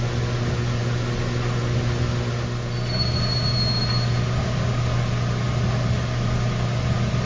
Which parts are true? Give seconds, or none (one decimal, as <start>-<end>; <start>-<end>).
0.0-7.3